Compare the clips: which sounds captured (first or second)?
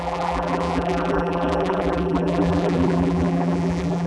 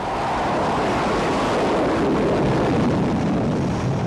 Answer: second